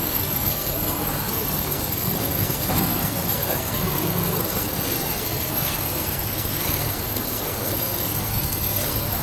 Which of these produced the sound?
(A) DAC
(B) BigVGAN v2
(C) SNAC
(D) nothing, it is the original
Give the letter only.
C